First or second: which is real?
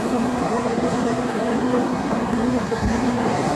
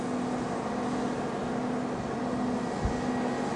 second